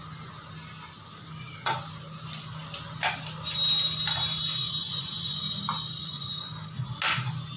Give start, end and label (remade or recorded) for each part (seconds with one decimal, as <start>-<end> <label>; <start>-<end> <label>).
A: 0.0-4.6 recorded; 4.6-5.4 remade; 5.4-6.0 recorded; 6.0-6.5 remade; 6.5-7.6 recorded